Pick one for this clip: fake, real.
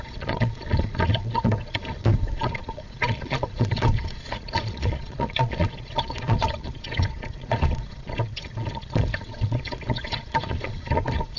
fake